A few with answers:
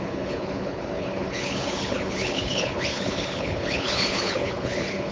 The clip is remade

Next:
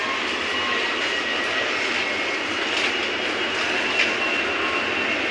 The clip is recorded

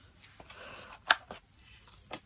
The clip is recorded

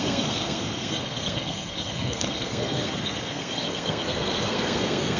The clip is remade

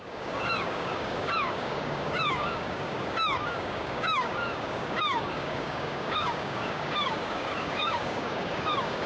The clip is remade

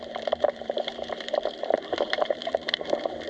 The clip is remade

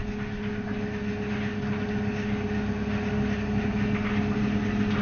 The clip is recorded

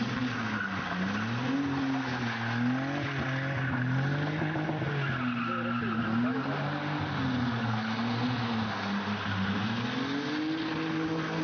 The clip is recorded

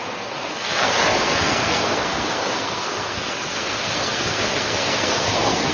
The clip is remade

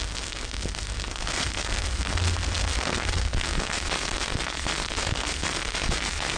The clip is remade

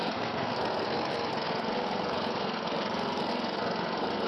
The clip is remade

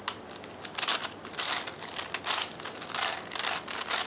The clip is recorded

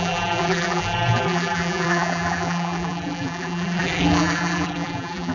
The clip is remade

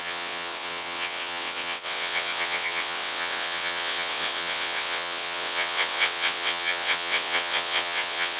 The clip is remade